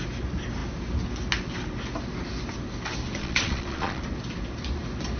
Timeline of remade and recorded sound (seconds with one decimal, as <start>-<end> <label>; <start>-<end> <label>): 0.0-3.2 recorded; 3.2-4.0 remade; 4.0-5.2 recorded

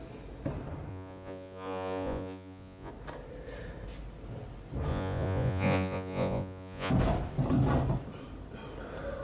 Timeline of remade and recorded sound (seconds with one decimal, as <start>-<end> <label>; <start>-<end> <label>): 0.0-0.9 recorded; 0.9-2.9 remade; 2.9-4.9 recorded; 4.9-6.9 remade; 6.9-9.2 recorded

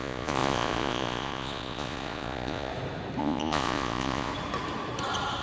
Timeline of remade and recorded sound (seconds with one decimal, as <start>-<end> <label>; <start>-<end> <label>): 0.0-2.7 remade; 2.7-3.2 recorded; 3.2-4.3 remade; 4.3-5.4 recorded

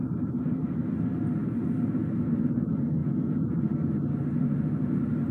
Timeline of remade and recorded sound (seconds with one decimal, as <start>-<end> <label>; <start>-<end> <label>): 0.0-3.0 recorded; 3.0-3.5 remade; 3.5-5.3 recorded